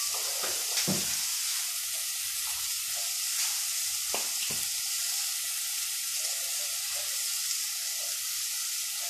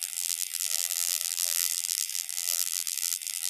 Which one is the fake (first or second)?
second